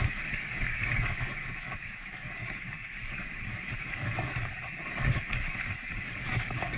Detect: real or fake fake